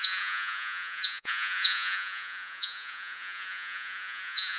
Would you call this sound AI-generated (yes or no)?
yes